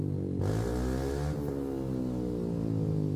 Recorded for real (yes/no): yes